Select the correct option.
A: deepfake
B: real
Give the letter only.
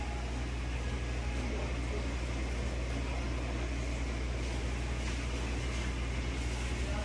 B